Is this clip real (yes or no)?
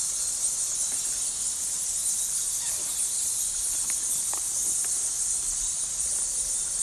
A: yes